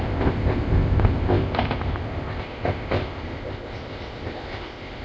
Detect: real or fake fake